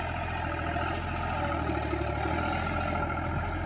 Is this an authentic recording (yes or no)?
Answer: yes